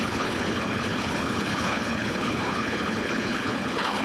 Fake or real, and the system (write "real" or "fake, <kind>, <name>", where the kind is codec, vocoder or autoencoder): fake, codec, HILCodec